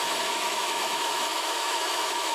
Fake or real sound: fake